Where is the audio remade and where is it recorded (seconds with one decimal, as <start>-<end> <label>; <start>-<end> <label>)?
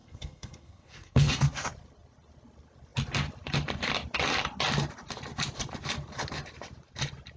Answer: 0.0-1.7 remade; 1.7-7.4 recorded